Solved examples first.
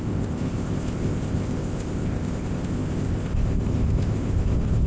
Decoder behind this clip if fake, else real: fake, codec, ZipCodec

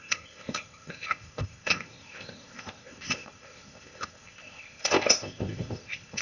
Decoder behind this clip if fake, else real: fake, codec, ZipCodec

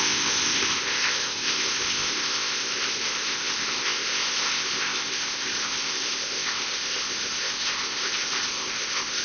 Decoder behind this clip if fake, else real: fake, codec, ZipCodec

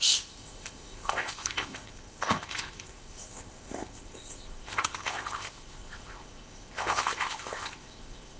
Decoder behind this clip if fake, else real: fake, codec, ZipCodec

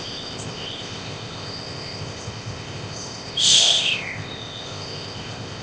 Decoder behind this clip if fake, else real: fake, codec, ZipCodec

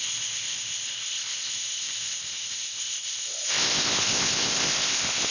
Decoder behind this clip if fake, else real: fake, codec, ZipCodec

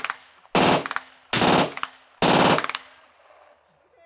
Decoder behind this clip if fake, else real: real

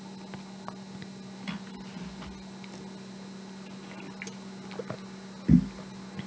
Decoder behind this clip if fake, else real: real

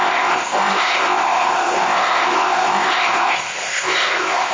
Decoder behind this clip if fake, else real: fake, codec, ZipCodec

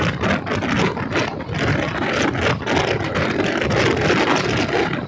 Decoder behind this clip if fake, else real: real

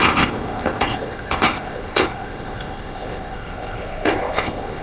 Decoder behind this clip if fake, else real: fake, codec, ZipCodec